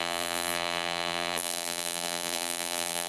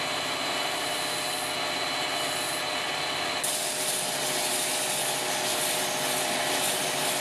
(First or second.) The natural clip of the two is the second